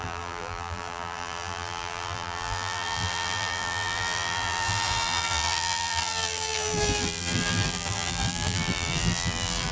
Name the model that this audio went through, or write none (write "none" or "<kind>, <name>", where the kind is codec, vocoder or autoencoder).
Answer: vocoder, BigVGAN v2